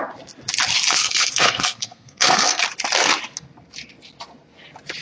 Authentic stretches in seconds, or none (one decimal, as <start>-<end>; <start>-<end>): 0.0-1.0; 2.6-5.0